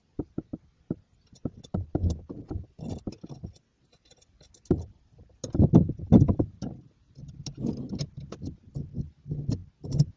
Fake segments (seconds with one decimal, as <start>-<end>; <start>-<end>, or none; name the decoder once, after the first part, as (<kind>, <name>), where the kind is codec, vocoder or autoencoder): none

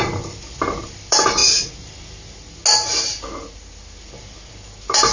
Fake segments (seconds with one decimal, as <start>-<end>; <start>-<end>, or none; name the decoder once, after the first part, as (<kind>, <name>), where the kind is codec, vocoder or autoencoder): 0.0-1.4 (vocoder, BigVGAN v2); 4.5-5.1

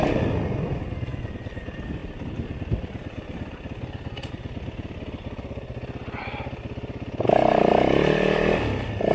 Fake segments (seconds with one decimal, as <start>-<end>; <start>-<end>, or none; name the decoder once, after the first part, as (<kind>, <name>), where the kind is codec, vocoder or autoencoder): none

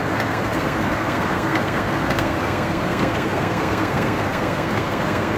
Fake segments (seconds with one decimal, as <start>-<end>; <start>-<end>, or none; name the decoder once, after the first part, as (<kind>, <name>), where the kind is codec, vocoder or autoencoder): 0.0-5.4 (codec, SNAC)

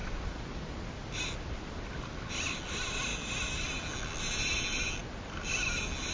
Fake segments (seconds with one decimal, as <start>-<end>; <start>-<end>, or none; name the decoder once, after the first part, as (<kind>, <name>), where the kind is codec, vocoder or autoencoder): 0.0-2.1 (vocoder, BigVGAN v2)